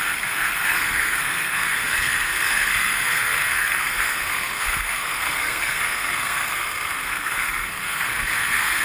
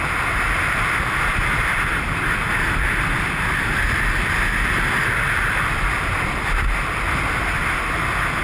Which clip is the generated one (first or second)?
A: first